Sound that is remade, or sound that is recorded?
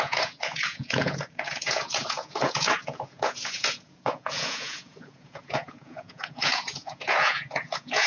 remade